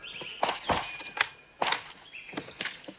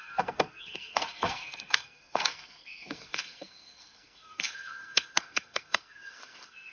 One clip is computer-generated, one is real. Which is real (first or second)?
first